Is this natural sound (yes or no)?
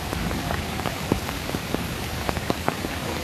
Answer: no